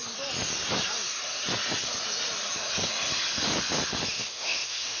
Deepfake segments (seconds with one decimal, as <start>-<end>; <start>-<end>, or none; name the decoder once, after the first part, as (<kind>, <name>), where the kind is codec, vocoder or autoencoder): 4.1-5.0 (autoencoder, DAC-VAE)